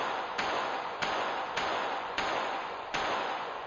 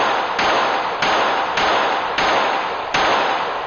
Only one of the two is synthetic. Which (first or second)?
first